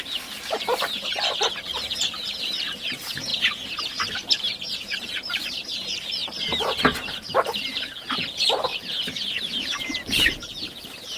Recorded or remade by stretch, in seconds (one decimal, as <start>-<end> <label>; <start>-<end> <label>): 0.0-3.3 remade; 3.3-3.8 recorded; 3.8-8.7 remade; 8.7-9.6 recorded; 9.6-11.2 remade